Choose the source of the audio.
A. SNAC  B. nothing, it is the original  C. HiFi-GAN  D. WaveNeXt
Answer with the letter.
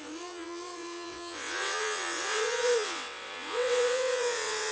D